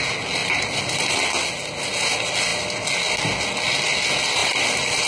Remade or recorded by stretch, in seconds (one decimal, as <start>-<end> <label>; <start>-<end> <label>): 0.0-0.4 recorded; 0.4-1.2 remade; 1.2-4.4 recorded; 4.4-5.1 remade